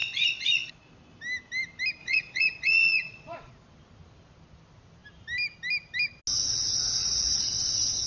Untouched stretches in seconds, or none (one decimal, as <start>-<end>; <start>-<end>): 0.9-2.0; 3.5-7.0; 7.5-8.1